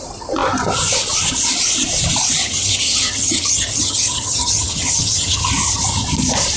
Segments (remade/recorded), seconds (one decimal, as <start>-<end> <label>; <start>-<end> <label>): 0.0-2.4 recorded; 2.4-5.5 remade; 5.5-6.6 recorded